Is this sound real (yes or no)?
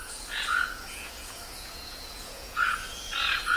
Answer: no